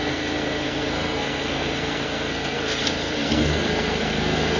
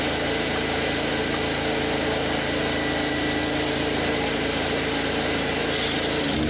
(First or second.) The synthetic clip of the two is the first